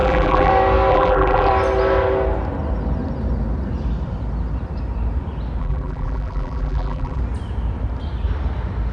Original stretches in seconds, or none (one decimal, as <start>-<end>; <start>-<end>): 0.5-0.9; 1.5-5.6; 7.2-8.9